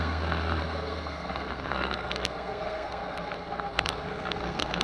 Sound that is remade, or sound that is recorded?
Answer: remade